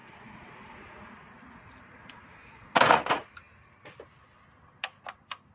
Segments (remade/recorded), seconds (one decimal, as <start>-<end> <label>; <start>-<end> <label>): 0.0-3.3 remade; 3.3-5.5 recorded

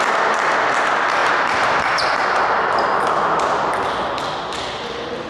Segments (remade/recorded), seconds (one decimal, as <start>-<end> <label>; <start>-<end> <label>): 0.0-5.3 recorded

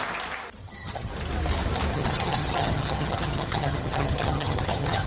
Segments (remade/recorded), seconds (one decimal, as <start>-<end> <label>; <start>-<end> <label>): 0.0-0.6 recorded; 0.6-1.1 remade; 1.1-1.9 recorded; 1.9-5.1 remade

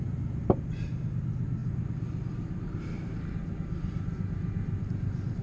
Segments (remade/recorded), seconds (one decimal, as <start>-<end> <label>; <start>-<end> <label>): 0.0-1.6 recorded; 1.6-4.8 remade; 4.8-5.4 recorded

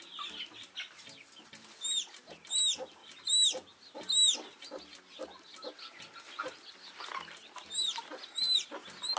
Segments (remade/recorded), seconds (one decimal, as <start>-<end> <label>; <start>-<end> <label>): 0.0-9.2 recorded

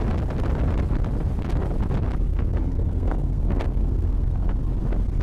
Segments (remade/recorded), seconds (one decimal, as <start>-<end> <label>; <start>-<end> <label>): 0.0-2.3 recorded; 2.3-4.6 remade; 4.6-5.2 recorded